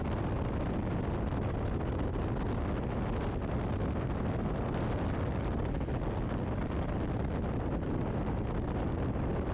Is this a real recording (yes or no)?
yes